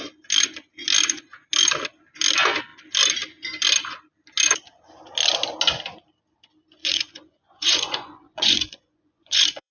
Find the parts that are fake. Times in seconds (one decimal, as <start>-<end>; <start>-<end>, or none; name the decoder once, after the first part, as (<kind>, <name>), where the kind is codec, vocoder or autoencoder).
6.8-9.7 (vocoder, Vocos)